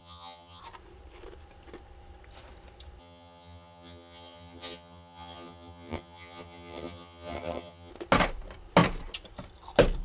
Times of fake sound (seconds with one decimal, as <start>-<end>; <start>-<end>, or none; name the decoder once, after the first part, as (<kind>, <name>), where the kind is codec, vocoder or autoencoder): 0.0-0.6 (vocoder, HiFi-GAN); 3.0-7.9